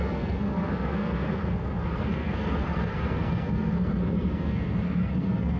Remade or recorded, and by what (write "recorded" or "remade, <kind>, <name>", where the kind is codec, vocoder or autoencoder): remade, codec, SNAC